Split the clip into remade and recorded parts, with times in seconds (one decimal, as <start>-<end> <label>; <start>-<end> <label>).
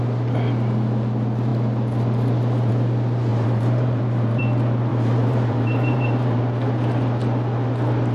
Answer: 0.0-3.3 recorded; 3.3-4.4 remade; 4.4-4.9 recorded; 4.9-6.4 remade; 6.4-8.1 recorded